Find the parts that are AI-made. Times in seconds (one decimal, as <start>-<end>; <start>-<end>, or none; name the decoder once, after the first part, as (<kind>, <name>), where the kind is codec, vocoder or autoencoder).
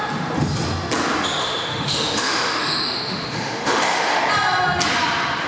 1.4-4.2 (autoencoder, DAC-VAE)